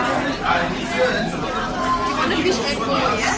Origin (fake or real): real